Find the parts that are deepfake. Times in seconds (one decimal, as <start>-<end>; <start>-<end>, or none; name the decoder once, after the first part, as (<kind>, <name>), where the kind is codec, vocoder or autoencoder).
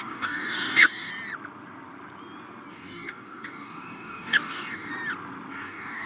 0.0-1.1 (codec, DAC); 2.7-4.9; 5.5-6.1